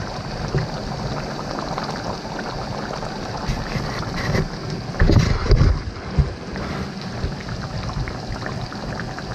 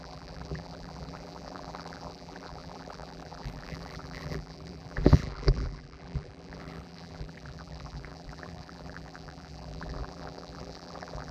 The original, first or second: first